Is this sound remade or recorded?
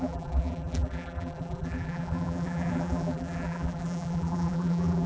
remade